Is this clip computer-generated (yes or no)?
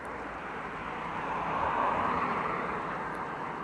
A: yes